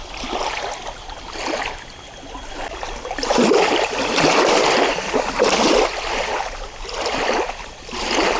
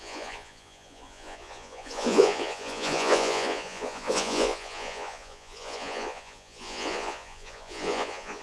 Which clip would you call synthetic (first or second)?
second